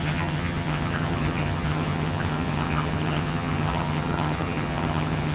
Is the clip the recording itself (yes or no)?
no